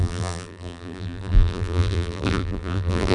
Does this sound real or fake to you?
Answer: fake